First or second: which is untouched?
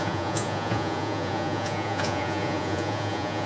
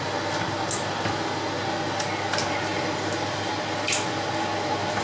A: second